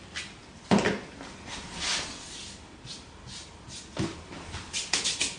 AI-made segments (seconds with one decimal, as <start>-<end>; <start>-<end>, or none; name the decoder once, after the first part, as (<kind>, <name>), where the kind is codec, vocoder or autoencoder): none